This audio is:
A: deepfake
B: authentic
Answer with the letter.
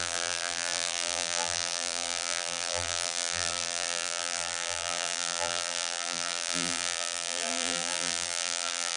A